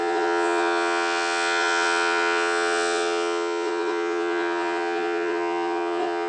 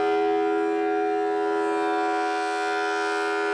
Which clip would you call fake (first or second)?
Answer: first